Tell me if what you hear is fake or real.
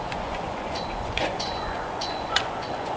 fake